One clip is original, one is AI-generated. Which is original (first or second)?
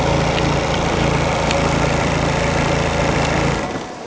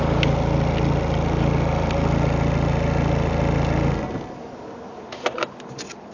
second